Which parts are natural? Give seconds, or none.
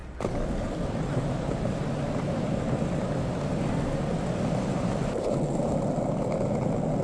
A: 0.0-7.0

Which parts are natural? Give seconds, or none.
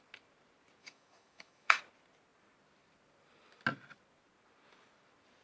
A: 0.0-0.8; 1.8-5.4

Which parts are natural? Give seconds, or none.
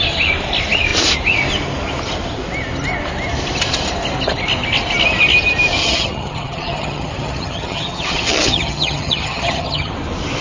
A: 0.0-5.8; 9.9-10.4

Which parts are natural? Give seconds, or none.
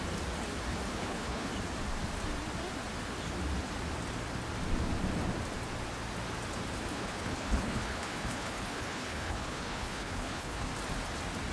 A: 0.0-0.9; 1.5-6.9; 10.7-11.5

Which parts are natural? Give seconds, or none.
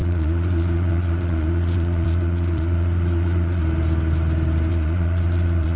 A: 3.6-4.7